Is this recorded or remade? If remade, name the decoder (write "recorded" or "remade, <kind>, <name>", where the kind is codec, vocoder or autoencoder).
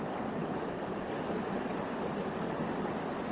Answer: recorded